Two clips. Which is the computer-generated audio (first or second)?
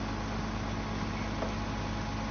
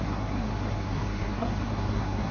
second